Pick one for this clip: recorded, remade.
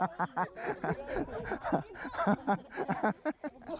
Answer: recorded